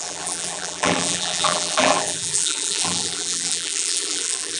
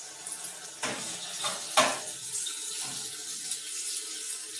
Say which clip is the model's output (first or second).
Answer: first